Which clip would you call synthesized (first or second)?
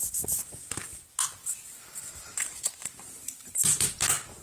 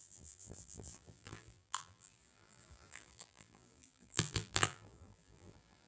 second